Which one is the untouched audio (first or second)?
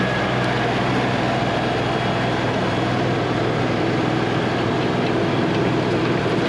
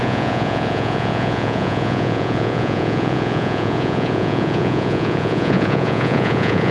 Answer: first